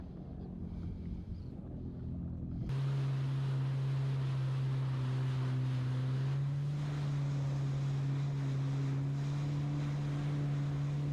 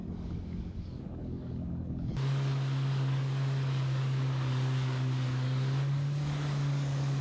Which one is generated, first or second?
second